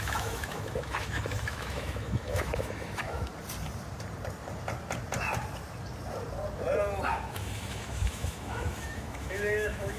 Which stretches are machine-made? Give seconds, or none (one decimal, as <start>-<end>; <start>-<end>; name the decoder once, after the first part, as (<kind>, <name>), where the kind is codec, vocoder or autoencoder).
0.0-3.3 (autoencoder, DAC-VAE); 7.1-10.0